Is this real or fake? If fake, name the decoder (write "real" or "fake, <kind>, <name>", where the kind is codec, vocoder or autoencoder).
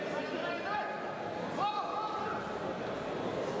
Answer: real